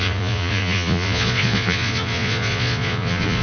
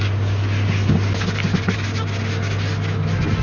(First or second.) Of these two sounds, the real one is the second